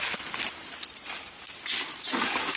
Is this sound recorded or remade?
recorded